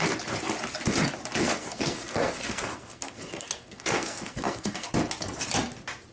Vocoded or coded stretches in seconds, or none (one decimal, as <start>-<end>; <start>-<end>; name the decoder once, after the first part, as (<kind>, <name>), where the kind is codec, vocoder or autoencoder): 1.4-4.9 (codec, SNAC)